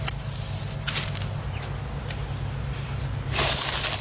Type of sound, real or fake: real